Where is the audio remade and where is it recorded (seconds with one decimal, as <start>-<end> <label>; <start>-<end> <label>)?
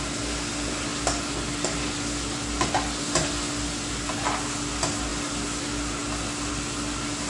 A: 0.0-7.3 recorded